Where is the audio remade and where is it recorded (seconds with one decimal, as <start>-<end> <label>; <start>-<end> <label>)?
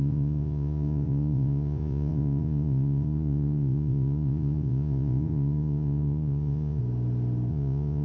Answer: 0.0-6.8 remade; 6.8-7.5 recorded; 7.5-8.0 remade